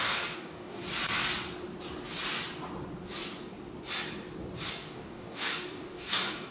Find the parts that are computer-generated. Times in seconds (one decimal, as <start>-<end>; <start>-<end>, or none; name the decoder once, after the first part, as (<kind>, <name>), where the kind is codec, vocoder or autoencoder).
0.0-0.8 (codec, DAC); 4.7-6.5